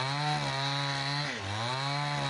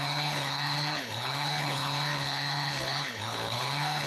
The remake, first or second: second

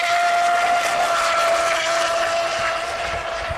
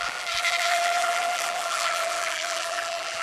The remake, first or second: second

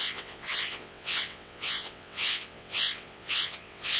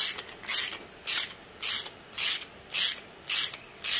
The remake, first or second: first